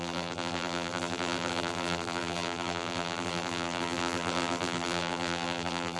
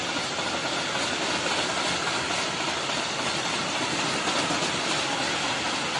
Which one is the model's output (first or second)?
first